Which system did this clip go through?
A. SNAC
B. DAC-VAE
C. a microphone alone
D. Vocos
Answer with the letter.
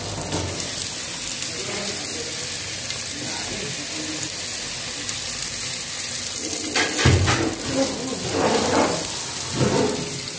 C